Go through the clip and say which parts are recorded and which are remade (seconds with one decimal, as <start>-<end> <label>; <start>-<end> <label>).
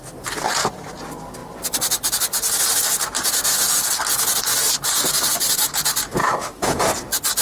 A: 0.0-6.2 recorded; 6.2-6.8 remade; 6.8-7.4 recorded